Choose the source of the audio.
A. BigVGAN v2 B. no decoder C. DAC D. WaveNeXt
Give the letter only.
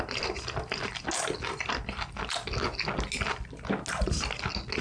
B